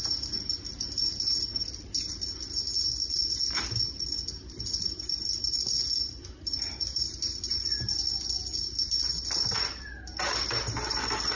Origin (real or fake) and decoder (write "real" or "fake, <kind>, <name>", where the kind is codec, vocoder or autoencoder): real